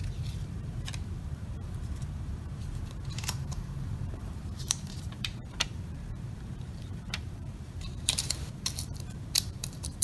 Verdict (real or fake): fake